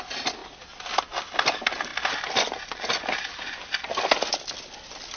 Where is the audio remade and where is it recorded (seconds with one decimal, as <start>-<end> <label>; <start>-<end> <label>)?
0.0-5.2 recorded